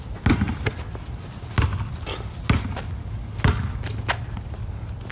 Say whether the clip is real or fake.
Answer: real